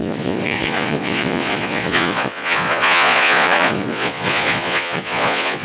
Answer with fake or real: fake